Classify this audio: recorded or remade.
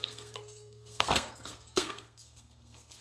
remade